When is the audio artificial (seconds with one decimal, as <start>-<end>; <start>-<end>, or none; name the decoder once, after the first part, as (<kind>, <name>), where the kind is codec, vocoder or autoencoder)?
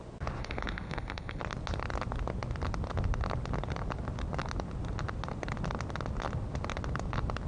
0.4-1.4 (codec, SNAC)